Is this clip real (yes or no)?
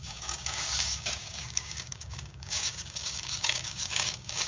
no